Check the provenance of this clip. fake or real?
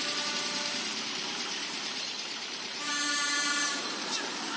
fake